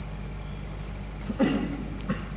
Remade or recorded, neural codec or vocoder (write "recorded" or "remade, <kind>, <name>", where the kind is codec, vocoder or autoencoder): recorded